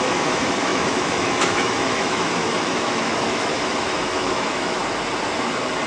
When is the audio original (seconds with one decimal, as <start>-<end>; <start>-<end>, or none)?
4.8-5.9